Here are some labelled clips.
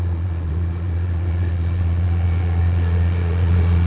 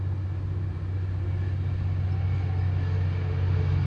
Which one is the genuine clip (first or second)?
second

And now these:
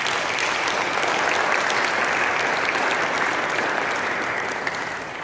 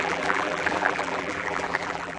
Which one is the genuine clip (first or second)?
first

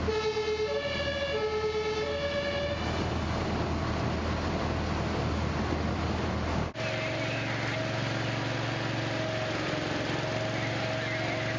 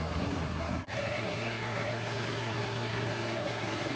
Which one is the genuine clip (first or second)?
first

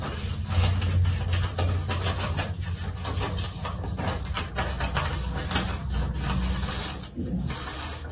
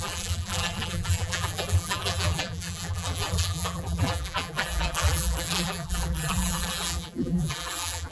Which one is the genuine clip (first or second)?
first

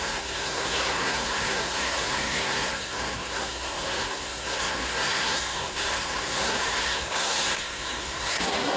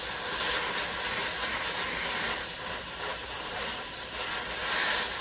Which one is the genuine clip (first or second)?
second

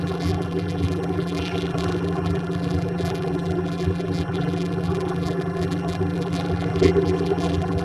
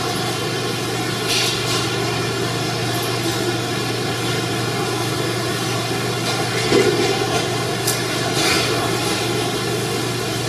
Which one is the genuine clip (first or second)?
second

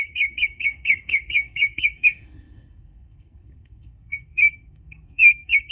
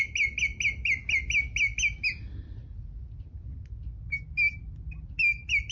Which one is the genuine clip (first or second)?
second